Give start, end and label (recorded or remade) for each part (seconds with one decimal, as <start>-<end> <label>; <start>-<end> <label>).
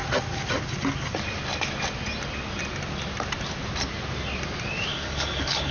0.0-4.9 recorded; 4.9-5.7 remade